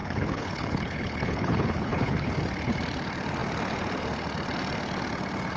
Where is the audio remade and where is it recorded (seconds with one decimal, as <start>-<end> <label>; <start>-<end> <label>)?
0.0-2.3 remade; 2.3-5.6 recorded